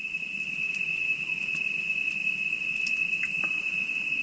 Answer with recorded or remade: recorded